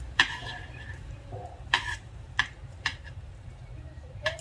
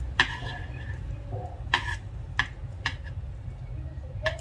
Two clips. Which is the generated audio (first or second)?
first